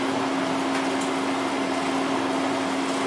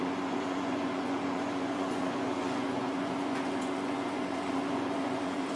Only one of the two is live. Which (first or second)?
first